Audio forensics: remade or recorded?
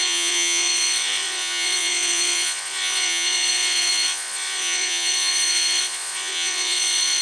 remade